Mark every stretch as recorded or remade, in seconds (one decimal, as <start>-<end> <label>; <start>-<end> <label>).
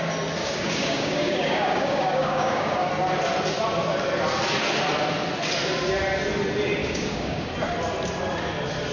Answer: 0.0-0.4 recorded; 0.4-2.9 remade; 2.9-6.8 recorded; 6.8-7.5 remade; 7.5-8.9 recorded